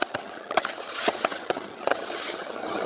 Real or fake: fake